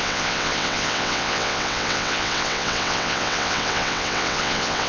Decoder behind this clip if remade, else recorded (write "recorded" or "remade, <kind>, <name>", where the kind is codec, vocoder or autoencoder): remade, vocoder, WaveNeXt